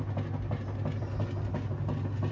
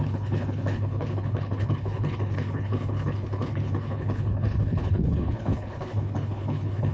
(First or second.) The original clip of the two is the first